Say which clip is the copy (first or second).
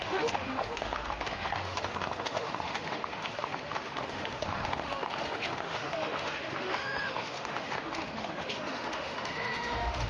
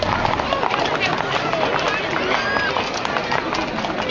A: first